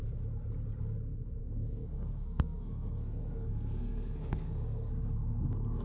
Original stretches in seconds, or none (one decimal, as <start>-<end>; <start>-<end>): 0.0-1.4; 4.9-5.8